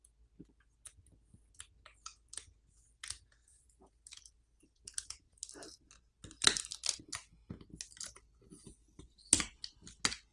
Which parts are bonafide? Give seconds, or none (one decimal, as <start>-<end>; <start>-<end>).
0.0-3.4; 6.0-10.3